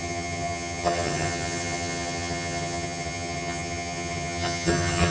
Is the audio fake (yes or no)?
yes